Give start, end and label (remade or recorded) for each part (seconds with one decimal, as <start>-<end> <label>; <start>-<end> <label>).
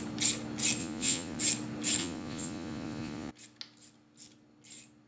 0.0-0.8 recorded; 0.8-1.4 remade; 1.4-2.0 recorded; 2.0-3.3 remade; 3.3-5.1 recorded